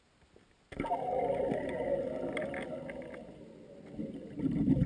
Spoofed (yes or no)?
no